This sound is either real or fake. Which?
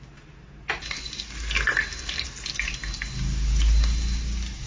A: real